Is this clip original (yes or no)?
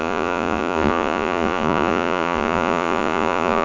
no